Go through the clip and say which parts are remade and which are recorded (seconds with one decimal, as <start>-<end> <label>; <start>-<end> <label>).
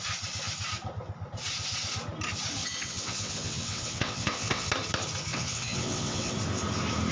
0.0-2.6 recorded; 2.6-4.7 remade; 4.7-5.3 recorded; 5.3-6.3 remade; 6.3-7.1 recorded